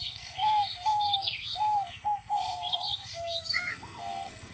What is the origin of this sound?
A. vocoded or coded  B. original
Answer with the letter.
A